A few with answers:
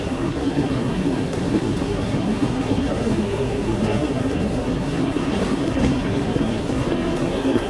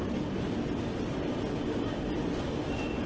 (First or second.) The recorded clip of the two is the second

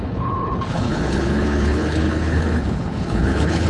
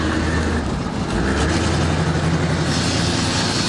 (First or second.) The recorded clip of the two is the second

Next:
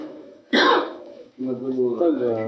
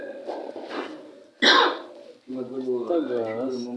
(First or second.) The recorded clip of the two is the second